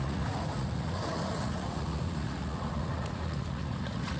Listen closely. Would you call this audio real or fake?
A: fake